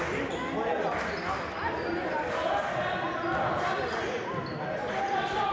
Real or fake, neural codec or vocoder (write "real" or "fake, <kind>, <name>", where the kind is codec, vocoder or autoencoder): real